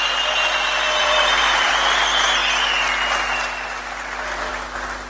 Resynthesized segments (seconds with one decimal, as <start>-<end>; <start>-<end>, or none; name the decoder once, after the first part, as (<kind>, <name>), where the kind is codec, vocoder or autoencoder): 1.0-1.7 (vocoder, BigVGAN v2)